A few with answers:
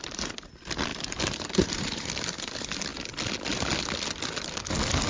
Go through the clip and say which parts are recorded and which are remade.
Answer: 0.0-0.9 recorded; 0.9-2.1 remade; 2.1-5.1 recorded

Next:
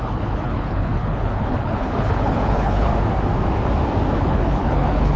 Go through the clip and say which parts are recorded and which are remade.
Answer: 0.0-2.9 remade; 2.9-4.2 recorded; 4.2-5.2 remade

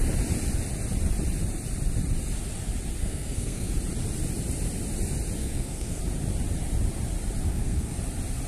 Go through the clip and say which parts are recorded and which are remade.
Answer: 0.0-3.0 recorded; 3.0-3.7 remade; 3.7-5.4 recorded; 5.4-6.0 remade; 6.0-7.5 recorded; 7.5-8.0 remade; 8.0-8.5 recorded